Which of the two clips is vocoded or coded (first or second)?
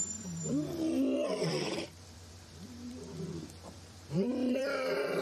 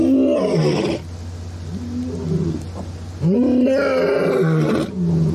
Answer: first